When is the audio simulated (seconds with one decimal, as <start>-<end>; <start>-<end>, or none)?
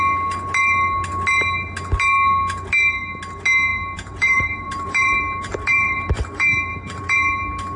3.7-7.0